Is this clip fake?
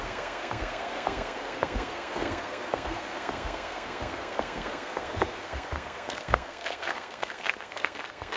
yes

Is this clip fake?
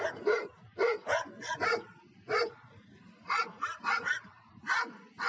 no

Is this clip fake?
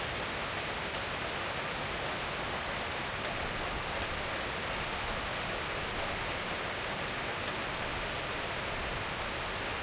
no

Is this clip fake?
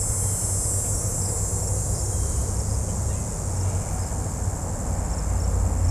no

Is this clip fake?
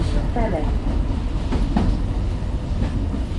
yes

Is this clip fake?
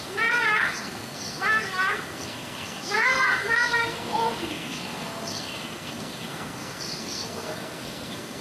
yes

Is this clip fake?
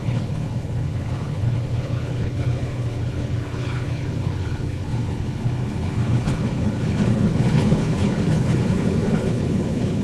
yes